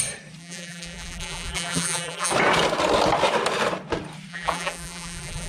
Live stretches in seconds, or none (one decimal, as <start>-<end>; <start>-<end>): 0.0-0.4; 2.3-4.3